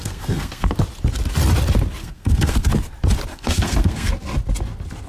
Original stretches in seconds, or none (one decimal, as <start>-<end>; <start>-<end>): 0.7-2.0; 2.7-3.3; 4.1-5.1